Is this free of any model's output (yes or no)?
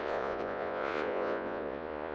no